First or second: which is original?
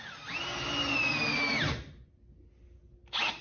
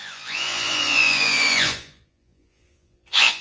first